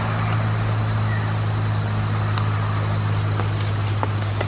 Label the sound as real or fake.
real